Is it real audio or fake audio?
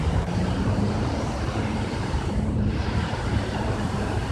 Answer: fake